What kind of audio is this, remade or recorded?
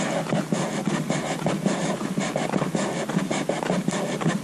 recorded